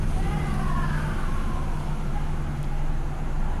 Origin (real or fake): real